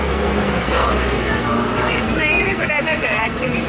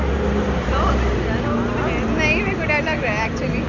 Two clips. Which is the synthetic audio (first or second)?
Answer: first